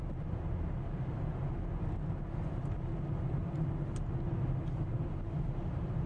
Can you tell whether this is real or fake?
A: real